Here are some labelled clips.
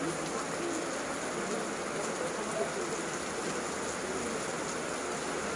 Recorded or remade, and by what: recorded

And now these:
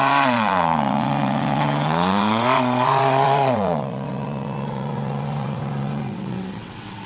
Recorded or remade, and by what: remade, vocoder, WaveNeXt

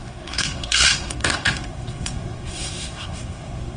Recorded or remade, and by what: remade, codec, SNAC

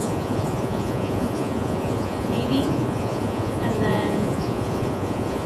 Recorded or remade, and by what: remade, vocoder, Vocos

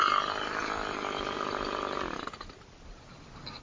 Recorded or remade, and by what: recorded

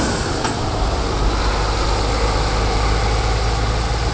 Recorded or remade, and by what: recorded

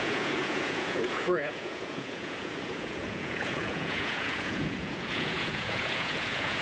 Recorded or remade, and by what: remade, vocoder, Vocos